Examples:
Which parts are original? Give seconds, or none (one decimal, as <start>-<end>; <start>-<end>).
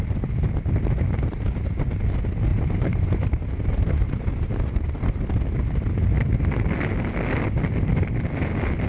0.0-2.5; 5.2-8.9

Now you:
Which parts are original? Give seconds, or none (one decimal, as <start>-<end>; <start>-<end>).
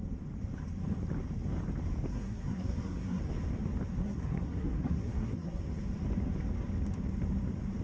0.0-2.1; 3.2-4.0; 5.6-7.8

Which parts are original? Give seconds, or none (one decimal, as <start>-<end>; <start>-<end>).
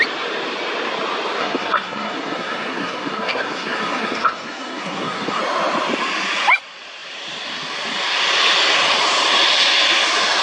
0.0-1.4; 5.4-10.4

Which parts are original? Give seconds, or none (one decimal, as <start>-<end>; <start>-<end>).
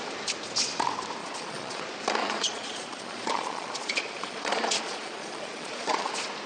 0.0-1.2; 1.8-2.2; 6.1-6.5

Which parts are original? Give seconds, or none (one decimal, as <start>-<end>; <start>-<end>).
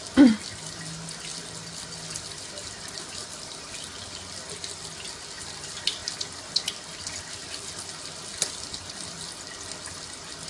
0.0-10.5